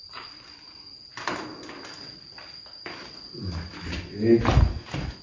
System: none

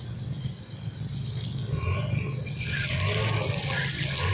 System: none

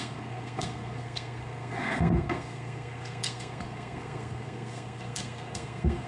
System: codec, SNAC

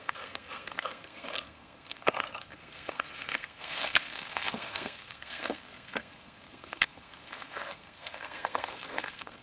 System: codec, SNAC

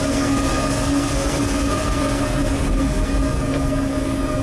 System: codec, SNAC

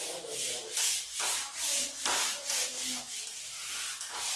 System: none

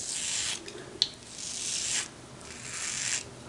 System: none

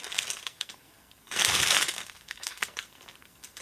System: codec, SNAC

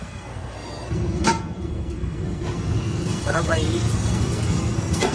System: codec, SNAC